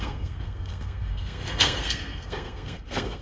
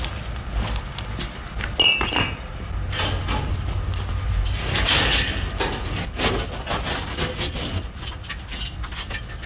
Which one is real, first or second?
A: second